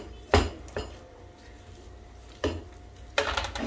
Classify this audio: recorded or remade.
recorded